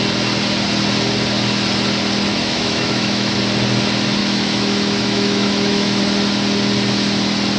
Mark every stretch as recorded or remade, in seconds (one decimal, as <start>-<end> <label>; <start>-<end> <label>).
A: 0.0-2.3 recorded; 2.3-3.4 remade; 3.4-4.2 recorded; 4.2-6.0 remade; 6.0-7.6 recorded